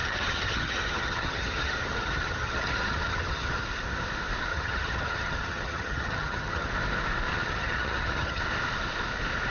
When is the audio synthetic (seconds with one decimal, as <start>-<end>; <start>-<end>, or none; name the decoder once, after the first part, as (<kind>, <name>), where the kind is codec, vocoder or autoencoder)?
0.0-3.6 (vocoder, HiFi-GAN); 4.5-6.7; 7.3-8.4